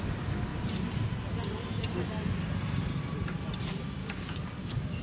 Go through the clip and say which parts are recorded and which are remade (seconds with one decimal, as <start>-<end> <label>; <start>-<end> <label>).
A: 0.0-4.0 recorded; 4.0-5.0 remade